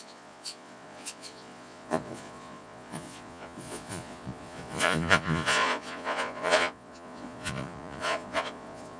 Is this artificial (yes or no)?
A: yes